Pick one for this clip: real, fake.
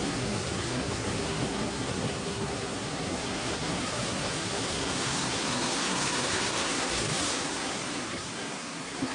fake